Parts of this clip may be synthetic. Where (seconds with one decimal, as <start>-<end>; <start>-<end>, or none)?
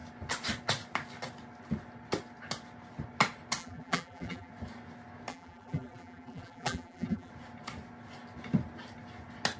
3.6-4.5; 5.3-7.3